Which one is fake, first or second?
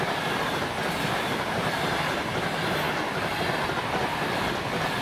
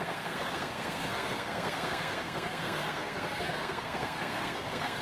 second